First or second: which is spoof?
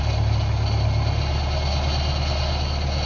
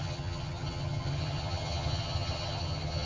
second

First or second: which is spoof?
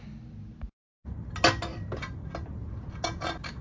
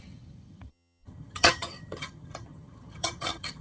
second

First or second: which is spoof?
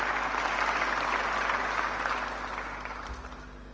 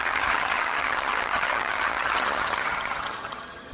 second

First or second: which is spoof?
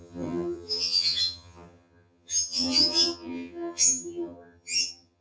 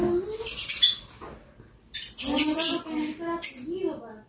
first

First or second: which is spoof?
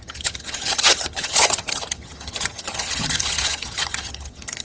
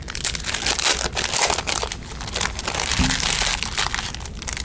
first